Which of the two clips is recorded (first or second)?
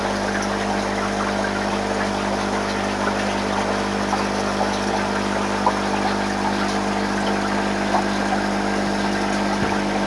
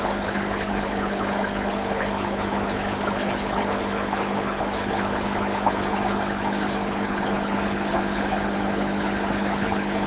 first